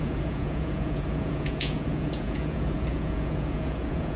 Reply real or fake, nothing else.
fake